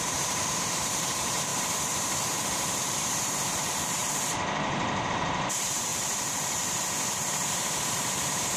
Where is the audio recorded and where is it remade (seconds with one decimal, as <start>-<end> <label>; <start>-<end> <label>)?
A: 0.0-5.9 remade; 5.9-7.8 recorded; 7.8-8.6 remade